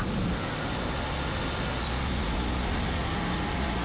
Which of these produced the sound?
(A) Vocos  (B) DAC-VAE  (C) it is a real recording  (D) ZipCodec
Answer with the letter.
C